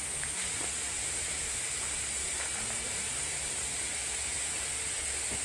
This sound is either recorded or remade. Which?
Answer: recorded